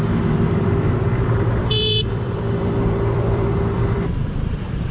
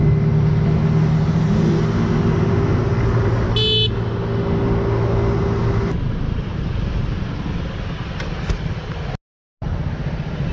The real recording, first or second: second